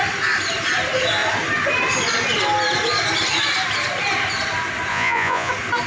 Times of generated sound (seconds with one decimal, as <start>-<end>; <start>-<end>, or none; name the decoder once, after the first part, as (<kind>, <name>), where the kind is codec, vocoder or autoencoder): 4.9-5.5 (vocoder, Vocos)